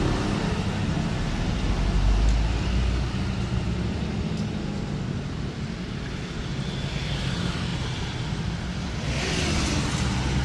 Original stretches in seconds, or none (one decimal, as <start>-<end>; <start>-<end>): 0.0-10.4